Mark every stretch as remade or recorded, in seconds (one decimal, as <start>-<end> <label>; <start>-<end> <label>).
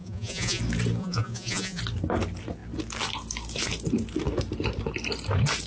0.0-0.6 remade; 0.6-1.0 recorded; 1.0-1.8 remade; 1.8-5.7 recorded